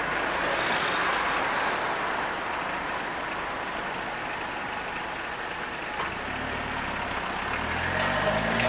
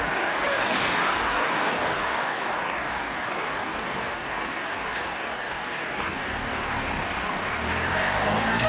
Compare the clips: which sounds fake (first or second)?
second